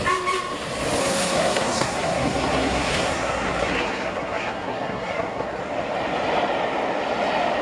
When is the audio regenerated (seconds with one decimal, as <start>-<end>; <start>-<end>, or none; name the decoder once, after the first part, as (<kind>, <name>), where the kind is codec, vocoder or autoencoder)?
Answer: 1.0-5.6 (codec, SNAC)